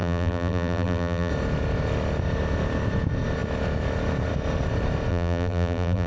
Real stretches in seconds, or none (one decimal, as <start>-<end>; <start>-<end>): 1.3-5.1